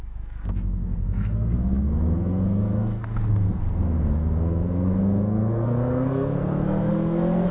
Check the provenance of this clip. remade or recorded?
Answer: remade